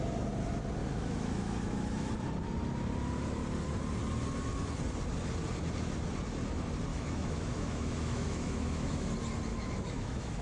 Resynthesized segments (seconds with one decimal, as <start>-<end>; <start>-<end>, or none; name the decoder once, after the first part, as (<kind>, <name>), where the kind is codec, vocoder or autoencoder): 0.8-2.1 (autoencoder, DAC-VAE); 6.9-9.1; 9.5-10.4